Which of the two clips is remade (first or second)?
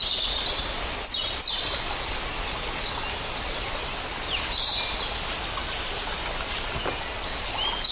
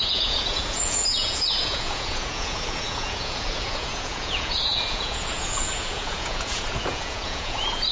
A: second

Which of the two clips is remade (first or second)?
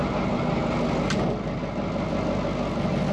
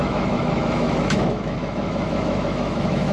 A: second